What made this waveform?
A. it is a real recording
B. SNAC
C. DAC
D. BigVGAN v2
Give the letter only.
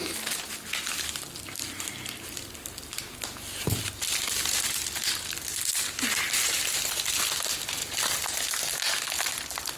A